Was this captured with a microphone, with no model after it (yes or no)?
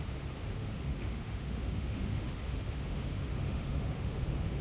no